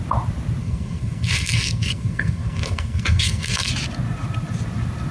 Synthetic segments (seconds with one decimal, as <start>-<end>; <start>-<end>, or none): 0.6-3.7